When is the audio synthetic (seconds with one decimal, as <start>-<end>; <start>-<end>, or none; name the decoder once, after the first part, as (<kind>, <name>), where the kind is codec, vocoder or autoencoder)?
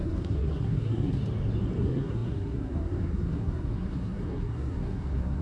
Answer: 0.0-1.2 (codec, SNAC); 1.8-5.4